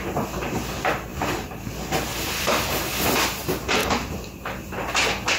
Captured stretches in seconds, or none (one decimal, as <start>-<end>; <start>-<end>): 0.0-1.1; 1.7-2.1; 2.8-3.8; 4.9-5.4